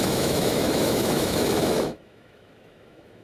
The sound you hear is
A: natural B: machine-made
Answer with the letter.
B